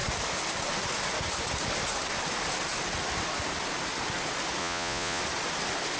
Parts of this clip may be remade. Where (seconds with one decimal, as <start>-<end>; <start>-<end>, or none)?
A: 4.6-5.2